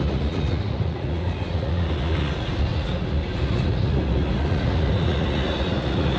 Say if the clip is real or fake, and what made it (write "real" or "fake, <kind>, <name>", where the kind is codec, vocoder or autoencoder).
fake, vocoder, Vocos